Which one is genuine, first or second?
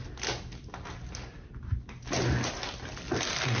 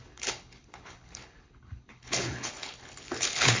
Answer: first